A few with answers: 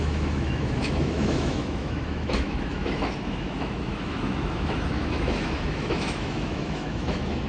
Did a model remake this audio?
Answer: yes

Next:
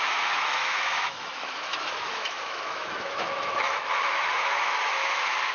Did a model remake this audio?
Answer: yes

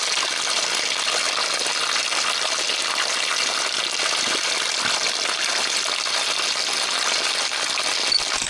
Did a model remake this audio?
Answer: no